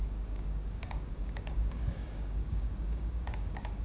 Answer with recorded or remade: remade